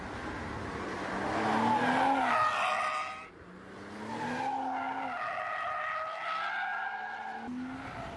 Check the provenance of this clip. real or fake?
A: real